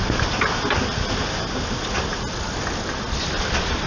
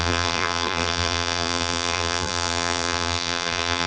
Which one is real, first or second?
first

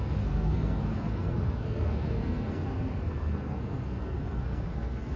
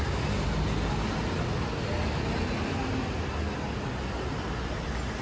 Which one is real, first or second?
second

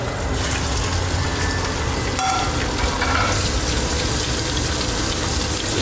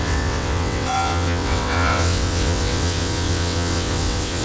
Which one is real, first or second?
first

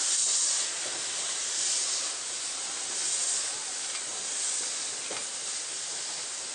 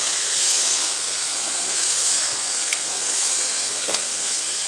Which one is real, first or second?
first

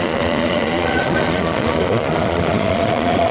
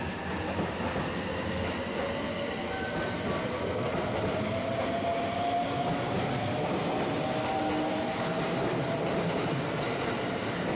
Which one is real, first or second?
second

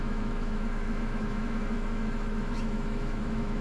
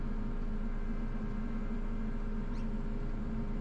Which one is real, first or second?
second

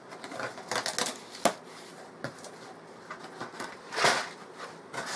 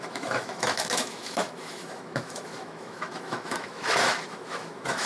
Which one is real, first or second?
first